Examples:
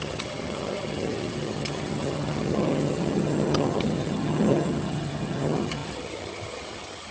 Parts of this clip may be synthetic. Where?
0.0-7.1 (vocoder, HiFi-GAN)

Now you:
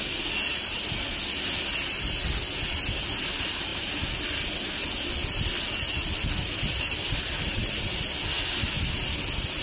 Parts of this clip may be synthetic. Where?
none

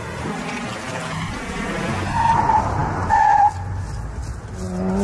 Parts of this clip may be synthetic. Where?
none